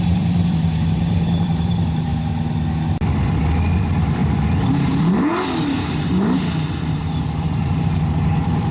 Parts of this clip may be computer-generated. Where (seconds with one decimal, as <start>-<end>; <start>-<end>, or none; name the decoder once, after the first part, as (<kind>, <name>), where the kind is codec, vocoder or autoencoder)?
0.0-2.1 (vocoder, BigVGAN v2); 3.8-4.2; 4.7-5.3; 6.8-8.7